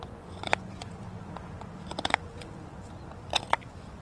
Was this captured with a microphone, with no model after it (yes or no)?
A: no